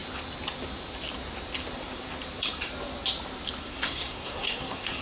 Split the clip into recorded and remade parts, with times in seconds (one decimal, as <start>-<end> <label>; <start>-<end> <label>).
0.0-3.6 recorded; 3.6-5.0 remade